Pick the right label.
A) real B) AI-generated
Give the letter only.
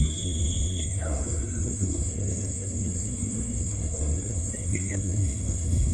B